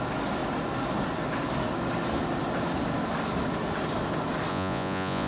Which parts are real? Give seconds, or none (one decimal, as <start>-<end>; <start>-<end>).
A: 0.0-4.5